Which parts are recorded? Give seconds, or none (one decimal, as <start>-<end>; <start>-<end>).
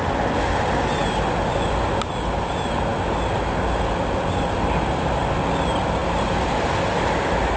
0.0-7.6